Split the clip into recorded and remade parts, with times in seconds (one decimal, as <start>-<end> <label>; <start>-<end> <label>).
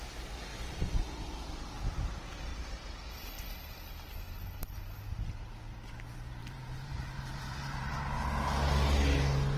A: 0.0-2.5 recorded; 2.5-3.1 remade; 3.1-6.4 recorded; 6.4-7.9 remade; 7.9-9.6 recorded